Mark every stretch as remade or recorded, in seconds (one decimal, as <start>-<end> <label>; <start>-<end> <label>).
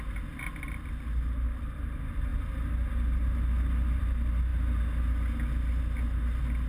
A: 0.0-6.7 recorded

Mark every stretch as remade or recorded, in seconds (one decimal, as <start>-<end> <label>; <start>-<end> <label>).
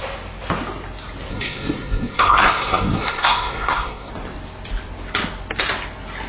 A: 0.0-1.3 recorded; 1.3-4.1 remade; 4.1-6.3 recorded